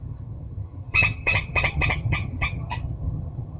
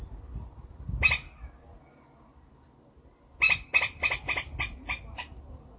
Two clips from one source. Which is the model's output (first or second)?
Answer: first